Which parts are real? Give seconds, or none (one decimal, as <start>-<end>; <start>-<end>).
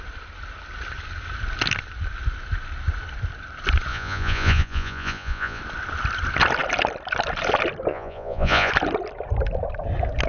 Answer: 0.0-3.9; 5.6-7.9; 8.7-10.3